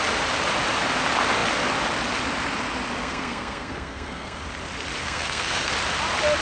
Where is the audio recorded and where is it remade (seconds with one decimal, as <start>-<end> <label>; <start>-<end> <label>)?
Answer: 0.0-3.0 recorded; 3.0-4.4 remade; 4.4-5.0 recorded; 5.0-5.7 remade; 5.7-6.4 recorded